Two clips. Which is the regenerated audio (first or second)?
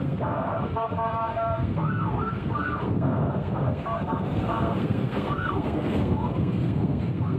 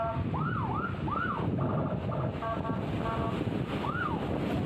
first